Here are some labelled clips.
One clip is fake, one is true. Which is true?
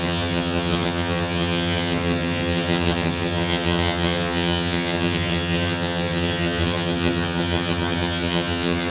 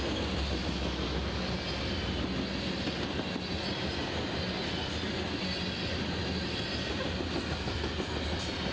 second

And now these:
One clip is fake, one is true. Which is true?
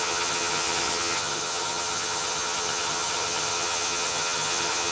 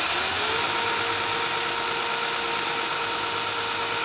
second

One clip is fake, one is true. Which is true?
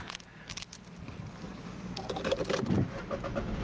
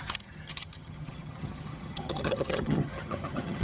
first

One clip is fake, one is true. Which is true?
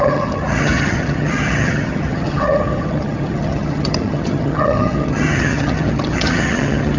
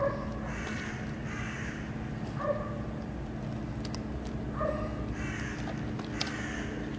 second